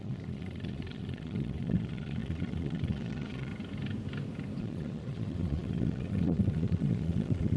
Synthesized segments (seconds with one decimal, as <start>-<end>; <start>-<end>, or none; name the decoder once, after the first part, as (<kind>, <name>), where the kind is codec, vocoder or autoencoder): 0.0-3.5 (vocoder, Vocos); 4.6-7.6